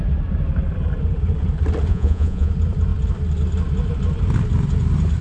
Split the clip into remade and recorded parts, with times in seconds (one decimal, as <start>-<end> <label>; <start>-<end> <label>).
0.0-1.9 recorded; 1.9-2.5 remade; 2.5-5.2 recorded

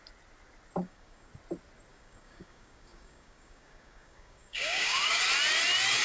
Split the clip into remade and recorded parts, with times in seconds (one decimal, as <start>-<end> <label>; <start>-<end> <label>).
0.0-0.8 recorded; 0.8-1.3 remade; 1.3-1.9 recorded; 1.9-5.2 remade; 5.2-6.0 recorded

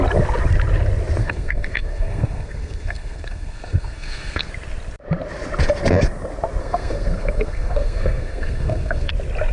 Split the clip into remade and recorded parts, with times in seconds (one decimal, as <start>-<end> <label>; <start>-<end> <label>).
0.0-1.2 recorded; 1.2-4.5 remade; 4.5-6.6 recorded; 6.6-9.1 remade; 9.1-9.5 recorded

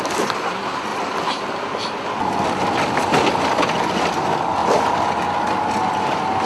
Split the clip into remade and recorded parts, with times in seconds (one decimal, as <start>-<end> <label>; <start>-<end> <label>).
0.0-6.5 recorded

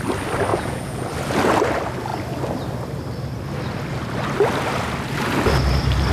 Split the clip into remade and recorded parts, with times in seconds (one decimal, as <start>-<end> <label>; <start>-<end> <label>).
0.0-0.5 recorded; 0.5-1.1 remade; 1.1-6.1 recorded

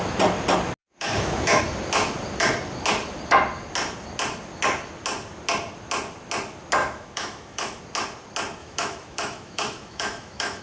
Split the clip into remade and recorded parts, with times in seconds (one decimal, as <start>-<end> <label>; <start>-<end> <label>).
0.0-0.8 recorded; 0.8-1.6 remade; 1.6-6.8 recorded; 6.8-7.8 remade; 7.8-8.6 recorded; 8.6-10.6 remade

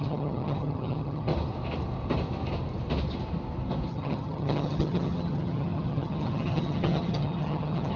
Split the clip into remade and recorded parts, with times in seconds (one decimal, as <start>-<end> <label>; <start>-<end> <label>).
0.0-1.3 remade; 1.3-3.9 recorded; 3.9-8.0 remade